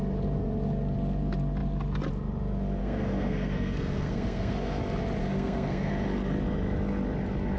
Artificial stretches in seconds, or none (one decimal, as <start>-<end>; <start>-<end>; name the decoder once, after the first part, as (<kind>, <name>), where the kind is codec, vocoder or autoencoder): 2.8-4.8 (codec, SNAC); 5.2-5.9